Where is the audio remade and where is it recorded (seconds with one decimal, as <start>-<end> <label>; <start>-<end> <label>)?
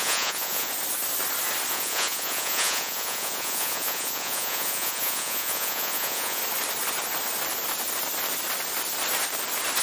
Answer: 0.0-0.7 remade; 0.7-1.7 recorded; 1.7-6.4 remade; 6.4-9.8 recorded